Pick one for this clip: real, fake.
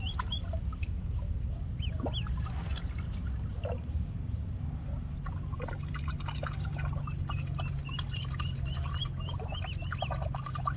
real